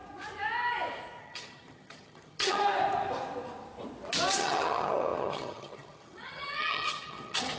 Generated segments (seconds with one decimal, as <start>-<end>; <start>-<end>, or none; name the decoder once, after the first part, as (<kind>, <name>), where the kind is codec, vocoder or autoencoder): 1.2-2.6 (vocoder, HiFi-GAN); 4.3-7.6